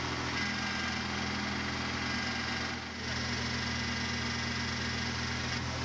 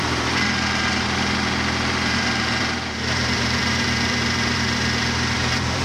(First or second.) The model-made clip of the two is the second